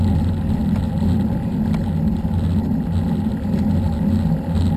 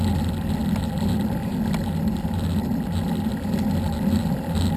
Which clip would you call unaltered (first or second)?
first